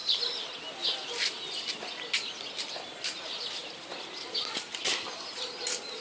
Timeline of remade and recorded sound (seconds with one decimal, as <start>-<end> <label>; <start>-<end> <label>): 0.0-6.0 recorded